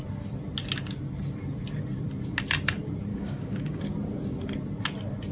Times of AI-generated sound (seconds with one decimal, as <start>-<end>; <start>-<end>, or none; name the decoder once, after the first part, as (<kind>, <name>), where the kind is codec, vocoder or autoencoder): 3.1-3.8 (codec, DAC)